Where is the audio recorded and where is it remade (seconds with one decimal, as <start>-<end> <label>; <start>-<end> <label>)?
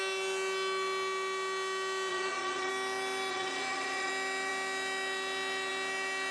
0.0-2.1 recorded; 2.1-2.7 remade; 2.7-3.3 recorded; 3.3-4.1 remade; 4.1-6.3 recorded